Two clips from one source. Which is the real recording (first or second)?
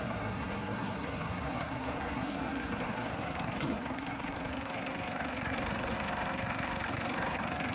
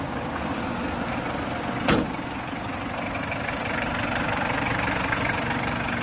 second